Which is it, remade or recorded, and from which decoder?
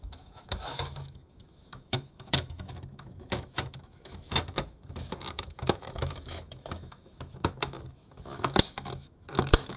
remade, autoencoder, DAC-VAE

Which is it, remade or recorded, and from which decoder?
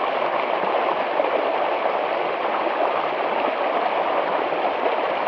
recorded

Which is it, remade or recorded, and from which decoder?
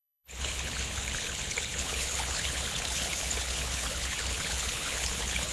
remade, codec, HILCodec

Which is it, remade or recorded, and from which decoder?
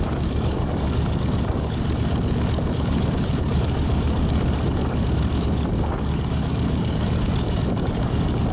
remade, codec, DAC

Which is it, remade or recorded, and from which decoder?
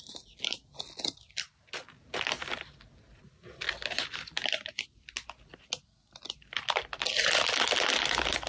recorded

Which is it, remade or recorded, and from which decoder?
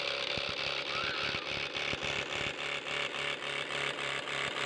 recorded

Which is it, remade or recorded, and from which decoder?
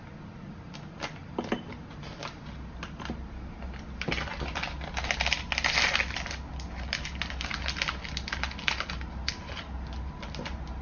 recorded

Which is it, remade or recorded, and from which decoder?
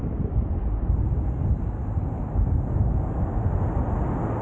recorded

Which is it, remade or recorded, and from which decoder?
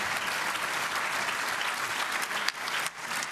recorded